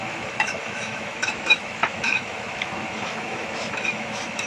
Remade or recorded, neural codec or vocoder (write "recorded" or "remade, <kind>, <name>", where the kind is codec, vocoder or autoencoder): remade, autoencoder, DAC-VAE